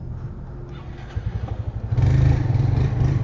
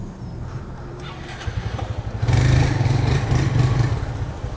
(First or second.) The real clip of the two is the first